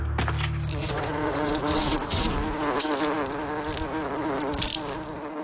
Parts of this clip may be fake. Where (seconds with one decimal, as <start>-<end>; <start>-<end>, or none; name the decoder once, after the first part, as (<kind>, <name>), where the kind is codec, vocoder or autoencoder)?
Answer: 0.8-2.2 (vocoder, WaveNeXt)